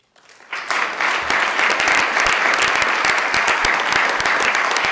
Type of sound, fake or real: real